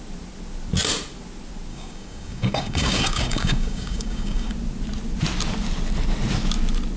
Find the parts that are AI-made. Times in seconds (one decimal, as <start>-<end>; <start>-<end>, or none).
1.7-4.5